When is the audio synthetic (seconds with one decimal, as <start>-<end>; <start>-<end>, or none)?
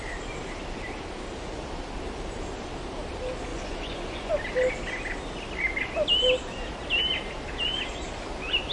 3.5-4.3